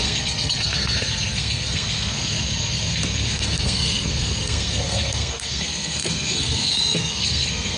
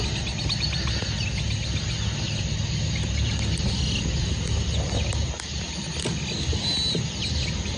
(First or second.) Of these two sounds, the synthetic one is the first